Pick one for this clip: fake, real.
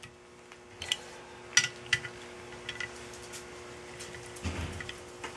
real